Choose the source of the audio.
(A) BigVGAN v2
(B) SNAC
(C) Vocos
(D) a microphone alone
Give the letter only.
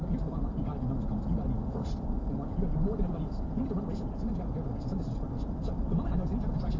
D